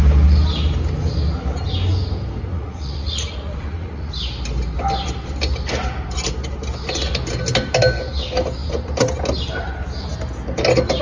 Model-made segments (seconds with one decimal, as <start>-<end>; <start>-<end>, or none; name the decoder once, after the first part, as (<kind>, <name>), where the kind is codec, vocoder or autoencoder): 2.5-4.1 (vocoder, Vocos)